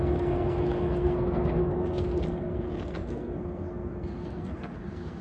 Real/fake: fake